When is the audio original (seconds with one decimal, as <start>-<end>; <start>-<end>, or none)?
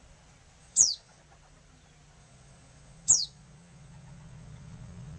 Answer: 0.0-0.6; 1.2-2.2